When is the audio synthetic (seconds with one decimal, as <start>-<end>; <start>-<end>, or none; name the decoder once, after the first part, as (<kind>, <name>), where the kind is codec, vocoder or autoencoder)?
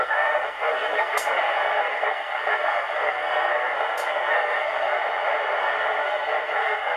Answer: 0.0-5.0 (codec, SNAC); 5.6-7.0